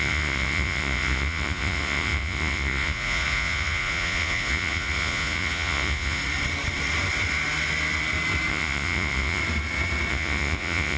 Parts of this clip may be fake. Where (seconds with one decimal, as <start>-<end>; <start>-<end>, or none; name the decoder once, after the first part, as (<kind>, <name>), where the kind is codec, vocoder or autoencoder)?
0.0-6.2 (vocoder, Vocos); 8.5-9.4; 10.1-11.0